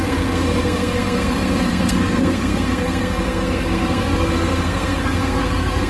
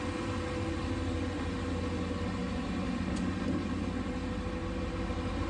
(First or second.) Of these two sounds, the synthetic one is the first